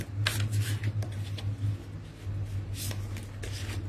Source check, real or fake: real